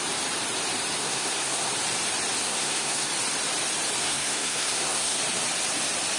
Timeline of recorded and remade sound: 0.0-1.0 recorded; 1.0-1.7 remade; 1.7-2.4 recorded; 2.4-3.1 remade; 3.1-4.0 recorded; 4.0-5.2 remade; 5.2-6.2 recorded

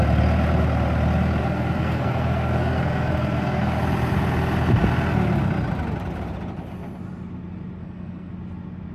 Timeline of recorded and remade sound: 0.0-1.4 recorded; 1.4-3.8 remade; 3.8-7.8 recorded; 7.8-8.3 remade; 8.3-8.9 recorded

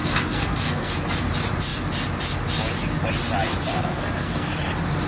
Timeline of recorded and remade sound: 0.0-0.9 remade; 0.9-3.7 recorded; 3.7-4.5 remade; 4.5-5.1 recorded

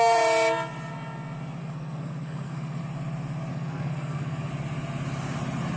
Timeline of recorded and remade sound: 0.0-1.6 recorded; 1.6-2.8 remade; 2.8-3.5 recorded; 3.5-4.5 remade; 4.5-5.8 recorded

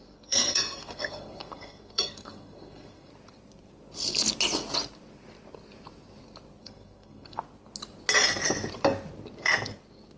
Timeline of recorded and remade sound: 0.0-3.1 remade; 3.1-6.6 recorded; 6.6-7.4 remade; 7.4-10.2 recorded

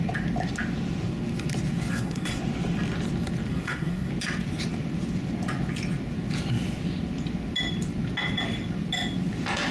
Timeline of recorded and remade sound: 0.0-1.9 recorded; 1.9-2.4 remade; 2.4-3.5 recorded; 3.5-4.1 remade; 4.1-9.7 recorded